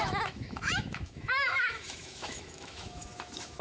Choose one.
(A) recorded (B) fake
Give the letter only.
B